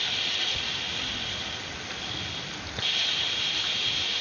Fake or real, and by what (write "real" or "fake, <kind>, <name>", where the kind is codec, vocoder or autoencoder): real